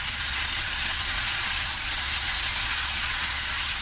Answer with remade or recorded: remade